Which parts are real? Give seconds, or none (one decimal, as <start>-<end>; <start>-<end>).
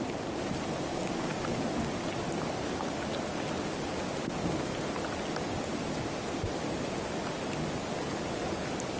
0.0-0.9; 1.6-9.0